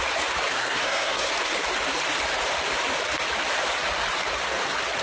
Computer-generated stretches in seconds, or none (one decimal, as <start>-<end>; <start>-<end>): 0.5-1.3